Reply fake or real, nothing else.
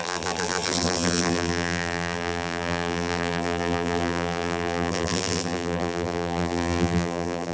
fake